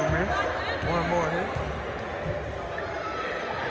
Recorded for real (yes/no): yes